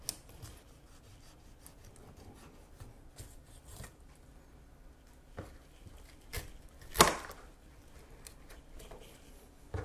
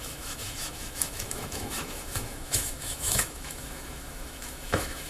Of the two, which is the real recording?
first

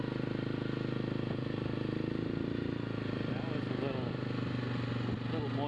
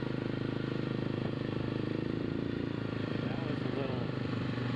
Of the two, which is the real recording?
first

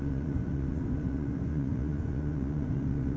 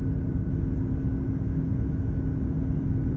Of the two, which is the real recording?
second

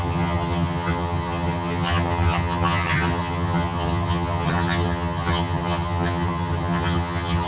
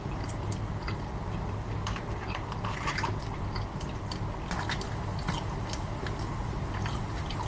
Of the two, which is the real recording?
second